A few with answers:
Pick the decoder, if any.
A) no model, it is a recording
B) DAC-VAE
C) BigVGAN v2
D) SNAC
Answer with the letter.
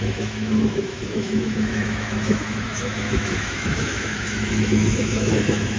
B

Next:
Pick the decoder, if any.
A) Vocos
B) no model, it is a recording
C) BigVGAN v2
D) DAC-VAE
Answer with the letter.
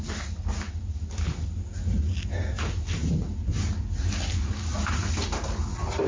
B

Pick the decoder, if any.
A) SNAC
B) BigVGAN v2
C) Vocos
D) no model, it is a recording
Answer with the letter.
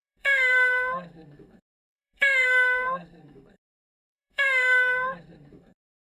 A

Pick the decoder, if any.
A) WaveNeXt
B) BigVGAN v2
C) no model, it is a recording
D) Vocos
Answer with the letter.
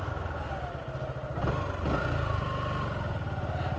C